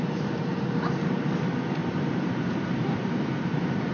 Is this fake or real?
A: fake